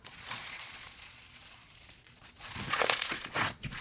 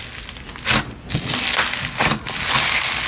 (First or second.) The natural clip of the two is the second